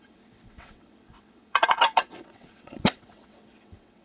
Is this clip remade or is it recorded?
remade